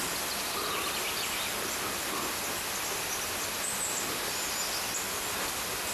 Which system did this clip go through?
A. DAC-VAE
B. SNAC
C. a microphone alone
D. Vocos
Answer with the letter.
C